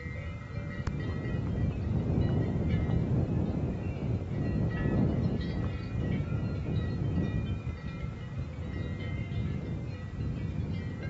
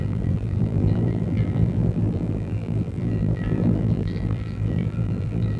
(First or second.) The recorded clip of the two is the first